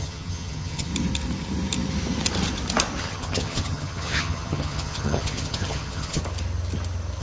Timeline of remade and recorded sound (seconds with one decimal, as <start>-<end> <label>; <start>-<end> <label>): 0.0-0.9 remade; 0.9-3.0 recorded; 3.0-6.2 remade; 6.2-7.2 recorded